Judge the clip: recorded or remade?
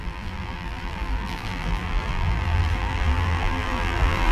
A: remade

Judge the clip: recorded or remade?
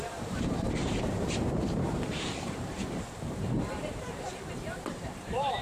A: remade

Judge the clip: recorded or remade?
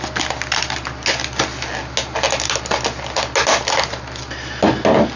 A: recorded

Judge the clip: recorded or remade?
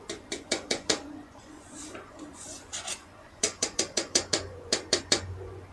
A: remade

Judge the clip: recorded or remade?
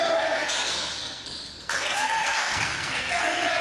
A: remade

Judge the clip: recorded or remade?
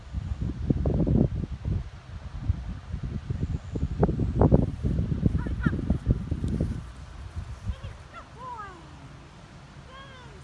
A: recorded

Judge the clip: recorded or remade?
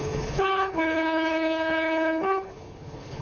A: remade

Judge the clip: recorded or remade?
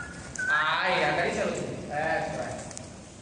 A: recorded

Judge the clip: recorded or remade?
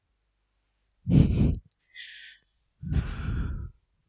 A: recorded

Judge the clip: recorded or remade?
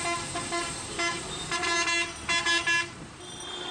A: recorded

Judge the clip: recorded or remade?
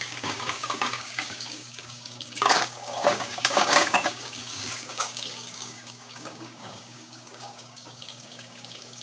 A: remade